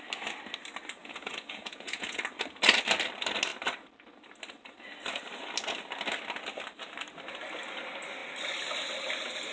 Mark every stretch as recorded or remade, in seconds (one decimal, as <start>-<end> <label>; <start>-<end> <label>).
0.0-1.0 recorded; 1.0-2.2 remade; 2.2-9.5 recorded